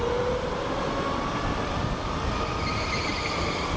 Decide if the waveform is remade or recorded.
recorded